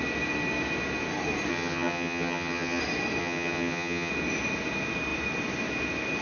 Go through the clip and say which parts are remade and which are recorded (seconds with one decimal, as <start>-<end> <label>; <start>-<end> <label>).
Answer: 0.0-1.5 recorded; 1.5-2.8 remade; 2.8-3.2 recorded; 3.2-4.1 remade; 4.1-6.2 recorded